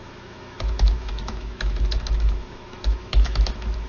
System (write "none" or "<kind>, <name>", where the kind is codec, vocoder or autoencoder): autoencoder, DAC-VAE